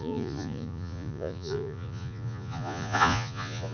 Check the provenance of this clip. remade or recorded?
remade